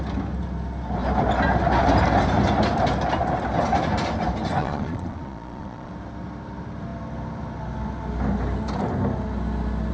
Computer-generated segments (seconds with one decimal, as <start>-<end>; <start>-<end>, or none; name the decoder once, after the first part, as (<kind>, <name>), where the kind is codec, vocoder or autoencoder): 4.6-5.9 (vocoder, Vocos)